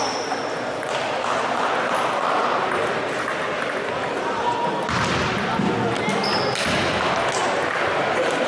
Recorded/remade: recorded